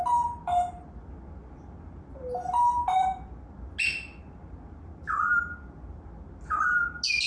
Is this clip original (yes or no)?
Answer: yes